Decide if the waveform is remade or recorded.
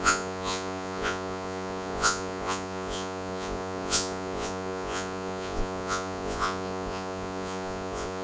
remade